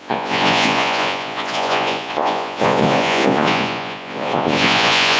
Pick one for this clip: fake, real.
fake